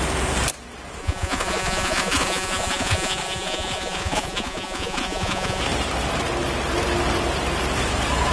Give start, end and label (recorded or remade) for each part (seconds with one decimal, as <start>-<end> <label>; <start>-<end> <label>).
0.0-1.0 recorded; 1.0-5.6 remade; 5.6-8.3 recorded